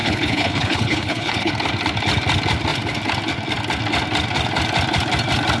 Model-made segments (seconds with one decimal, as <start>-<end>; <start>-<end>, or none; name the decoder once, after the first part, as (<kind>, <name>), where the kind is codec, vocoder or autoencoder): 0.0-1.5 (codec, HILCodec)